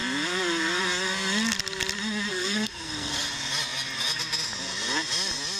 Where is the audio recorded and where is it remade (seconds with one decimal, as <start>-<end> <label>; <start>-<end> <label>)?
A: 0.0-2.3 recorded; 2.3-3.2 remade; 3.2-5.6 recorded